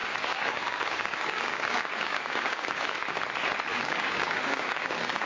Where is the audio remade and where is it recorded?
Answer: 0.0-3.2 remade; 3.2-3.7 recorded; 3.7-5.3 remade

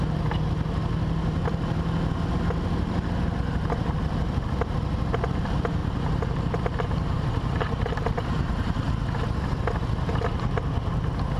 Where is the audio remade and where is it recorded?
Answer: 0.0-5.8 recorded; 5.8-8.9 remade; 8.9-11.4 recorded

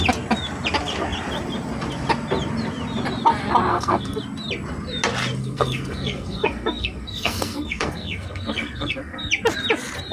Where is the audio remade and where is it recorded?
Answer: 0.0-3.7 recorded; 3.7-4.2 remade; 4.2-5.4 recorded; 5.4-9.3 remade; 9.3-10.1 recorded

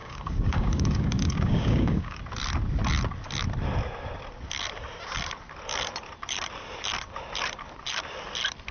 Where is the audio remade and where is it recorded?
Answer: 0.0-2.2 remade; 2.2-8.7 recorded

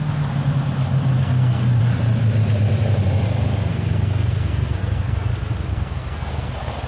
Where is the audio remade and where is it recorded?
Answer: 0.0-1.2 recorded; 1.2-1.8 remade; 1.8-3.7 recorded; 3.7-5.3 remade; 5.3-5.7 recorded; 5.7-6.5 remade; 6.5-6.9 recorded

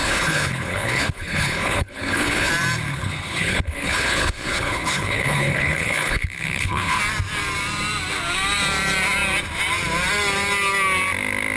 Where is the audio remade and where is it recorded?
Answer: 0.0-2.5 remade; 2.5-2.9 recorded; 2.9-7.0 remade; 7.0-11.6 recorded